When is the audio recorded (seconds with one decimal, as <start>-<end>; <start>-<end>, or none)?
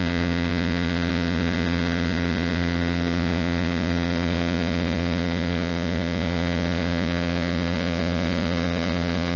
none